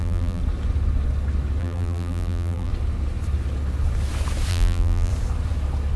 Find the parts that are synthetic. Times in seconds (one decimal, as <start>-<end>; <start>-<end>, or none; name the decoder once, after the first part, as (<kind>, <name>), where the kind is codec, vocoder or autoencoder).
0.0-0.4 (vocoder, BigVGAN v2); 1.6-2.7; 4.5-5.1